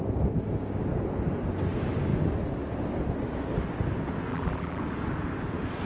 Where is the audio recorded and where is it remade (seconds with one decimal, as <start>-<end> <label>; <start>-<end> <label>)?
0.0-4.3 recorded; 4.3-4.8 remade; 4.8-5.9 recorded